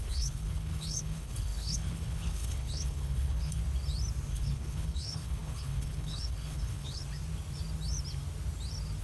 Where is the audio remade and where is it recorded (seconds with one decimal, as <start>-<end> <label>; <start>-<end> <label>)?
0.0-3.6 remade; 3.6-4.3 recorded; 4.3-7.0 remade; 7.0-9.0 recorded